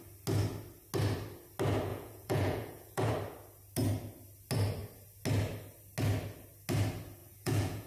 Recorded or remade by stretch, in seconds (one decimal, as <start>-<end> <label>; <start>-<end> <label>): 0.0-1.9 recorded; 1.9-3.1 remade; 3.1-7.2 recorded; 7.2-7.9 remade